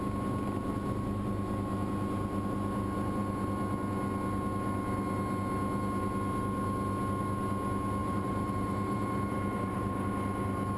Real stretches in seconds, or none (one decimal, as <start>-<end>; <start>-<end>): 0.0-8.0; 10.1-10.8